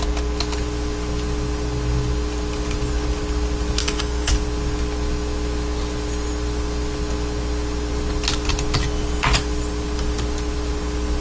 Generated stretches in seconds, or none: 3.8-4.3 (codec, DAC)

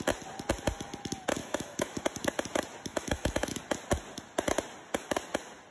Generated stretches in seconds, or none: 1.4-2.0 (autoencoder, DAC-VAE); 2.9-3.6